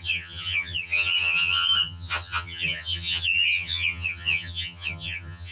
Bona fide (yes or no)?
no